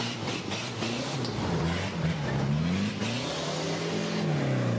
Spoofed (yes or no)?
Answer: no